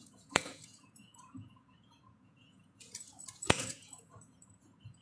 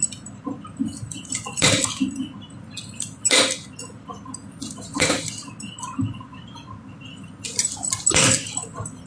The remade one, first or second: first